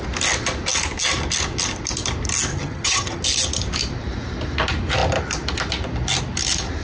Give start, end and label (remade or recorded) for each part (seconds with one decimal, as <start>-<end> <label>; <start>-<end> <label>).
0.0-2.5 recorded; 2.5-3.2 remade; 3.2-6.8 recorded